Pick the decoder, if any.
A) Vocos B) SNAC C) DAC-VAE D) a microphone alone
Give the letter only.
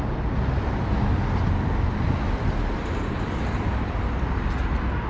D